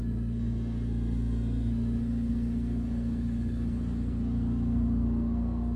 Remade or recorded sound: remade